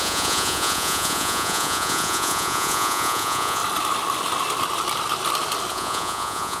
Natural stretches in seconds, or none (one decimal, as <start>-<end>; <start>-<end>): 3.6-5.7